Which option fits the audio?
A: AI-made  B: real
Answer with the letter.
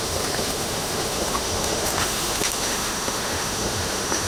A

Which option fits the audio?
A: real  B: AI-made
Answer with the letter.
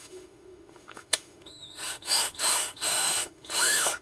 B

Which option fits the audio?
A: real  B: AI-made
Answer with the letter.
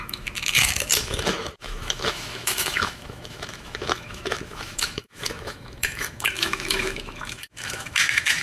B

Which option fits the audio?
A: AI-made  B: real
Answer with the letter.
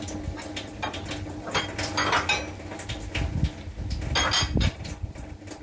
B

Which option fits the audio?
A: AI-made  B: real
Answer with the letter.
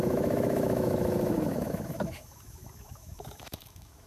A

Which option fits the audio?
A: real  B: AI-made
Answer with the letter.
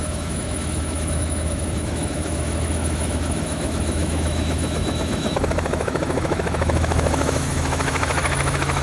B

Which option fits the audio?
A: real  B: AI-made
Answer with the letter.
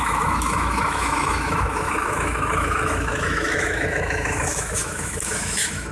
B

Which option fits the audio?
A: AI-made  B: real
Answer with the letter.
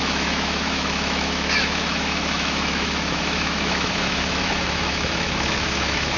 A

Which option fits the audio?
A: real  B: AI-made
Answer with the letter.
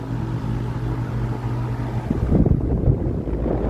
A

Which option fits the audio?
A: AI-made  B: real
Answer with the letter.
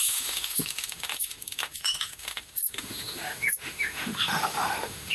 A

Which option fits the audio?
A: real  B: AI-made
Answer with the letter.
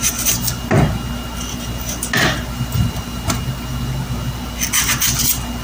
A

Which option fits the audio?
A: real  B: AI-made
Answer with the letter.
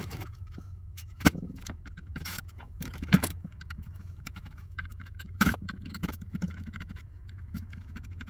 B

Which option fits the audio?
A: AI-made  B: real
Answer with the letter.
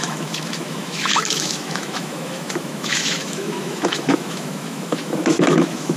A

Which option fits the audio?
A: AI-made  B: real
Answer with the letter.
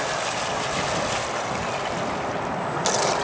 B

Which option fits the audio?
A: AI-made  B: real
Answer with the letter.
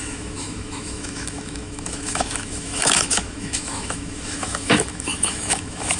A